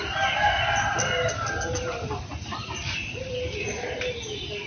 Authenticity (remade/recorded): recorded